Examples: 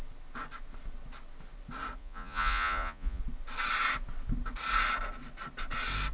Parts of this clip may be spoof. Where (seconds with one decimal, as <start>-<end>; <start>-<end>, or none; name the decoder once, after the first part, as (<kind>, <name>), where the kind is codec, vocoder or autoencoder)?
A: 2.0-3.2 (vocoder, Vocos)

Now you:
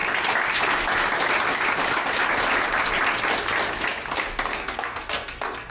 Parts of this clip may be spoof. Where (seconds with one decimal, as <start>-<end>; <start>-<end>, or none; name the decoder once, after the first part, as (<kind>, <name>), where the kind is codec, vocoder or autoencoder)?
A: 4.5-5.7 (codec, SNAC)

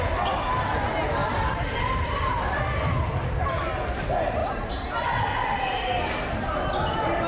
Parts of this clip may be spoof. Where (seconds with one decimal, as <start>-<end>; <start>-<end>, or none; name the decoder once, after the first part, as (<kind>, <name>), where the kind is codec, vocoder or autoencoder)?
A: 1.2-2.6 (vocoder, BigVGAN v2); 4.4-6.1